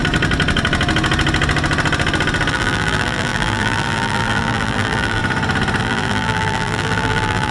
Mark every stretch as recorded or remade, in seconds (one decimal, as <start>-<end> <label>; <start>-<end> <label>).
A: 0.0-2.5 recorded; 2.5-5.2 remade; 5.2-5.8 recorded; 5.8-7.5 remade